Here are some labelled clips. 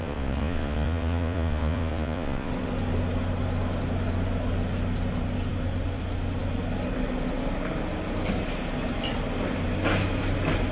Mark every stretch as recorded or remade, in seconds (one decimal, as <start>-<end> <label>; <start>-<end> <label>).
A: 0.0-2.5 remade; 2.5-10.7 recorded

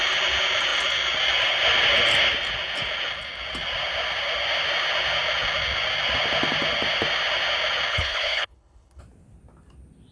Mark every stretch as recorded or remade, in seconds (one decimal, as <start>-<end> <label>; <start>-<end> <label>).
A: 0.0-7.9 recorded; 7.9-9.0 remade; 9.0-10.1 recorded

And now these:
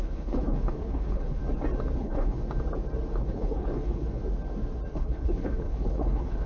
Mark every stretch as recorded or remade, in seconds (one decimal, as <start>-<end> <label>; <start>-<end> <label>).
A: 0.0-1.4 remade; 1.4-2.0 recorded; 2.0-2.4 remade; 2.4-3.2 recorded; 3.2-4.2 remade; 4.2-4.9 recorded; 4.9-6.5 remade